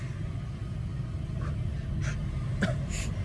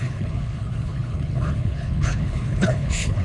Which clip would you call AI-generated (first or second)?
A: second